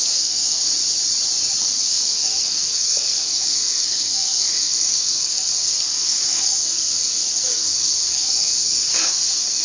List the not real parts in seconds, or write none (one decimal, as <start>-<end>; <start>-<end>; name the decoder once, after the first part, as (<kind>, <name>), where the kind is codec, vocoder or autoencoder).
0.0-0.6 (codec, SNAC); 1.6-9.6